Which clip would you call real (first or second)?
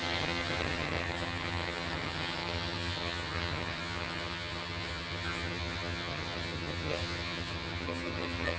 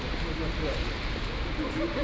second